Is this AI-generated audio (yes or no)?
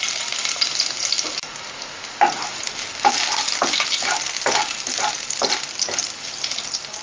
no